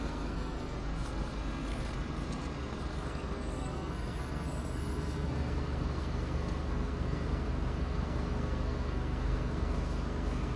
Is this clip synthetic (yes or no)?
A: yes